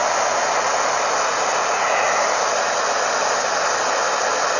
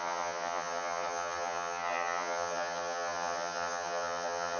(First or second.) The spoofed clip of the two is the second